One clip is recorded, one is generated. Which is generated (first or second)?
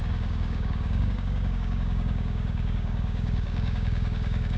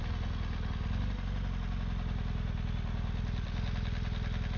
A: first